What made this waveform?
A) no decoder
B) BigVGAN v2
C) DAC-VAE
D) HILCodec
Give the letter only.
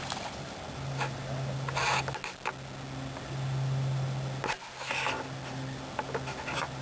A